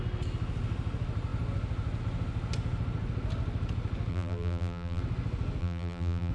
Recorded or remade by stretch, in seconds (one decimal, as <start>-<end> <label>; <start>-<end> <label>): 0.0-4.1 recorded; 4.1-5.0 remade; 5.0-5.6 recorded; 5.6-6.3 remade